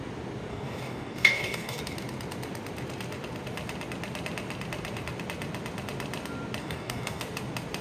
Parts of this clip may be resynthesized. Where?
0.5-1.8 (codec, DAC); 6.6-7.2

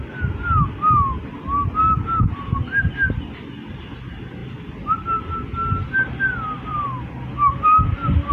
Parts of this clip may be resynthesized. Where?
none

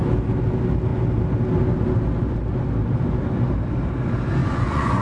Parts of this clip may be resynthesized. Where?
4.4-5.0 (vocoder, Vocos)

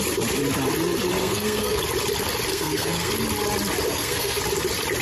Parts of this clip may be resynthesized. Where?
1.2-1.8 (codec, SNAC); 2.5-3.1; 3.9-4.4

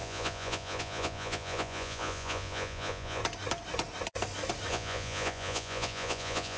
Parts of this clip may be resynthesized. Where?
0.0-3.2 (vocoder, Vocos); 4.7-6.6

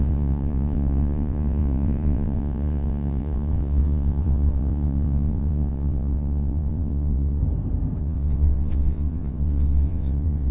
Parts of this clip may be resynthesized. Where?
0.0-7.4 (vocoder, WaveNeXt); 8.0-10.5

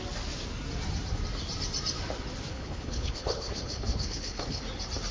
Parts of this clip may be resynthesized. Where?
2.5-4.6 (codec, HILCodec)